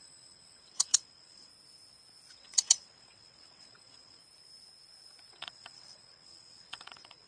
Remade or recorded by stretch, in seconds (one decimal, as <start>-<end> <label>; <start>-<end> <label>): 0.0-1.5 remade; 1.5-2.3 recorded; 2.3-4.2 remade; 4.2-5.3 recorded; 5.3-7.3 remade